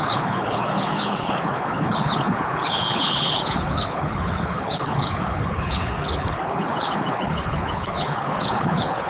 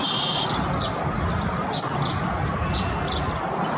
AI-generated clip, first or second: first